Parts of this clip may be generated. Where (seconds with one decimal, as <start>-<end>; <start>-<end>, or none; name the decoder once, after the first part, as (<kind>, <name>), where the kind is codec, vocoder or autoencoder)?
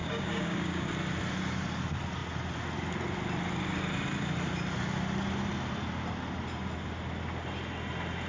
0.0-0.9 (codec, DAC)